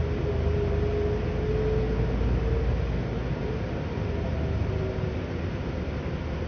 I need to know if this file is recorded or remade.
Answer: recorded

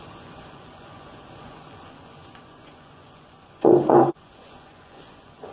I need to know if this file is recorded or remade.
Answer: remade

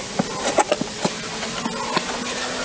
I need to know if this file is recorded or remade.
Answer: recorded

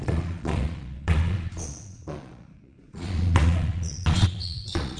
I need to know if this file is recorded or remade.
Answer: remade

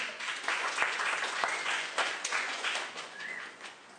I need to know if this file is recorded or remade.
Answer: remade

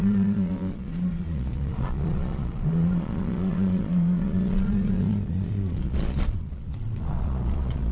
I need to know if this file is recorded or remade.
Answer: remade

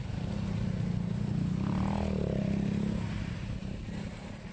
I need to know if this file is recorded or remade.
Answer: recorded